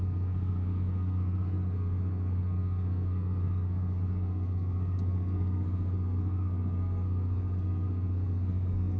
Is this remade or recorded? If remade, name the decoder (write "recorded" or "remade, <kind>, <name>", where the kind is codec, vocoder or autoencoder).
remade, codec, SNAC